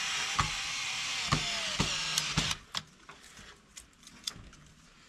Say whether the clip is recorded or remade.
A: recorded